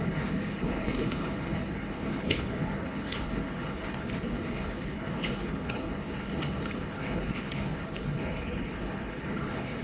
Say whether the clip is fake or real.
fake